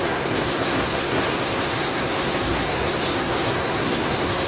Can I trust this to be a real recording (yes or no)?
no